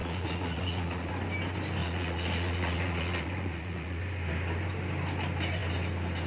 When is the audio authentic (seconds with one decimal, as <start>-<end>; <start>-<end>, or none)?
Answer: 1.1-1.8; 4.0-6.3

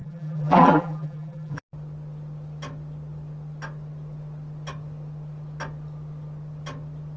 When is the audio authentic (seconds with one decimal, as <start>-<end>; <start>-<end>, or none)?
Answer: 1.6-7.2

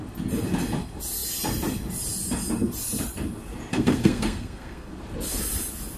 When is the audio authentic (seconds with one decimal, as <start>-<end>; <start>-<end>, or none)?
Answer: 0.0-3.7; 4.9-6.0